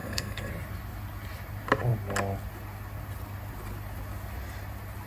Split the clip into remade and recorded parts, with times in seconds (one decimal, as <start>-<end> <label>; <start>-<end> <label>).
0.0-0.5 remade; 0.5-5.1 recorded